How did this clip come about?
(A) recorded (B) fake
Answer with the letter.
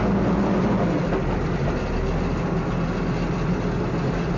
A